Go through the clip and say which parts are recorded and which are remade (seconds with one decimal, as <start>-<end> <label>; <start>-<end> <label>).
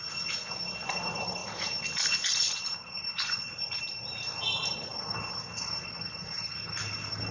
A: 0.0-7.3 recorded